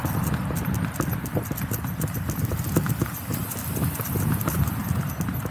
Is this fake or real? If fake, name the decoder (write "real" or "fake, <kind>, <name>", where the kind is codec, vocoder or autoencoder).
real